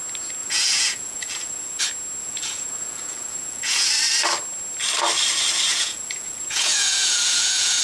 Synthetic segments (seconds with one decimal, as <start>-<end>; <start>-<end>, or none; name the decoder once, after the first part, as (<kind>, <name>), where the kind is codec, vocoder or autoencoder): 0.4-1.8 (vocoder, Vocos); 2.2-3.9; 5.7-7.8